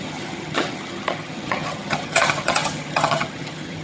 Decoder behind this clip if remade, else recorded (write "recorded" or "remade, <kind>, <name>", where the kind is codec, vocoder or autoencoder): remade, vocoder, HiFi-GAN